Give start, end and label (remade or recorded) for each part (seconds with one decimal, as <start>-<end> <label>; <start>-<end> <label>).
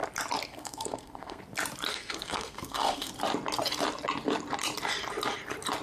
0.0-0.5 recorded; 0.5-1.4 remade; 1.4-1.9 recorded; 1.9-3.1 remade; 3.1-5.8 recorded